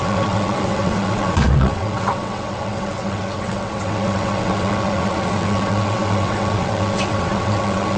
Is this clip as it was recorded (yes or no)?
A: no